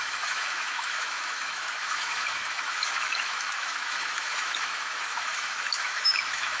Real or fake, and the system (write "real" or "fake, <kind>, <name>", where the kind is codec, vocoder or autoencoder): fake, autoencoder, DAC-VAE